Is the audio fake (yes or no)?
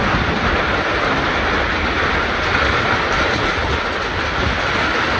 no